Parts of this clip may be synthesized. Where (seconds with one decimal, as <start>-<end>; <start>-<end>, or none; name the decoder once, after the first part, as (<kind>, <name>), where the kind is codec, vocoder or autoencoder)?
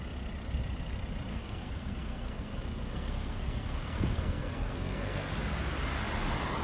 1.3-5.3 (codec, SNAC)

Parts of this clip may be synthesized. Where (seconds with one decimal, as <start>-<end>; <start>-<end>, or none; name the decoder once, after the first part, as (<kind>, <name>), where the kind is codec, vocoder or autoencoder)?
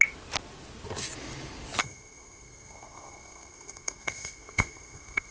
1.8-5.3 (codec, SNAC)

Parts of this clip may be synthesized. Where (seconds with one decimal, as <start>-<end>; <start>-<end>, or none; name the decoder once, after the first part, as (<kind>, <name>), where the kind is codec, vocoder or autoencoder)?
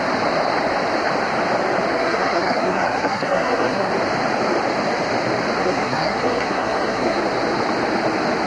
1.9-3.9 (codec, SNAC); 5.6-7.2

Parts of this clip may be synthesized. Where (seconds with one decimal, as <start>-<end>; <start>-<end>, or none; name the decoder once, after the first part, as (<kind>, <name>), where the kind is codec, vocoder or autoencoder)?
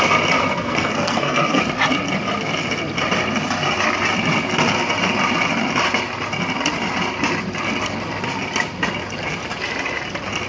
0.4-1.6 (codec, SNAC)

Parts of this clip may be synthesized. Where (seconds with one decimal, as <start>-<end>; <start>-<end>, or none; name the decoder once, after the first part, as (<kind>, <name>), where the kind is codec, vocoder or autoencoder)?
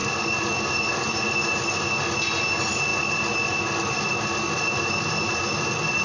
none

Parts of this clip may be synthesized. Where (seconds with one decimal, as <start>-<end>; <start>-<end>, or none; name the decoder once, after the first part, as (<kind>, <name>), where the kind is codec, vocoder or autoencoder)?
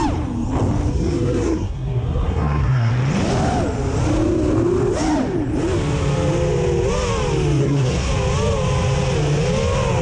0.9-2.9 (codec, SNAC); 7.6-8.1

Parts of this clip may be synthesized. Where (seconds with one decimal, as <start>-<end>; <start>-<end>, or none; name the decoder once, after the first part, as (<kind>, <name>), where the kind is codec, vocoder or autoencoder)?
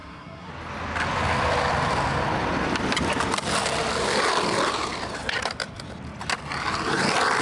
0.0-0.5 (codec, SNAC)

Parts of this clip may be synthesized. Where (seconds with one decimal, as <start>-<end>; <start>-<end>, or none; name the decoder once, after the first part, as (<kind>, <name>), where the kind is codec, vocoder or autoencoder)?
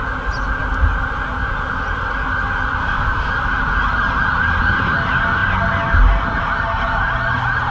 2.8-3.3 (codec, SNAC)